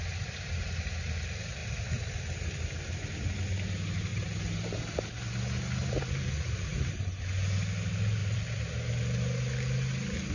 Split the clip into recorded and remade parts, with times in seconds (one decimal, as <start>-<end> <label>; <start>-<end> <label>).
0.0-4.1 recorded; 4.1-4.8 remade; 4.8-5.8 recorded; 5.8-7.0 remade; 7.0-8.2 recorded; 8.2-8.7 remade; 8.7-10.3 recorded